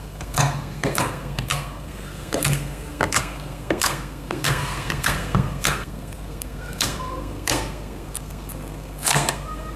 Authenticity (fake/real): fake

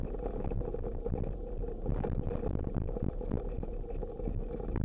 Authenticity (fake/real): real